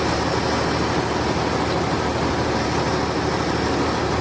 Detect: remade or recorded recorded